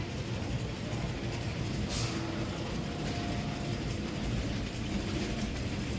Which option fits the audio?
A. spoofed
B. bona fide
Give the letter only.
B